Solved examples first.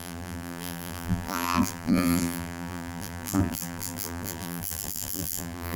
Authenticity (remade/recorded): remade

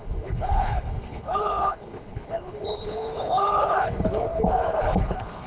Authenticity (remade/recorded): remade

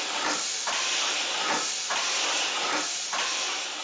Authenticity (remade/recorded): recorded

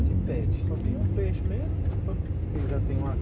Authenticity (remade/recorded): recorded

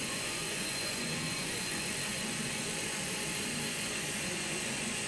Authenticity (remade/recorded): remade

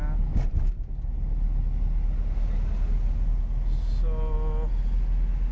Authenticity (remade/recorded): recorded